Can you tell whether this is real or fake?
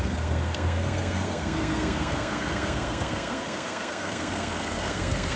fake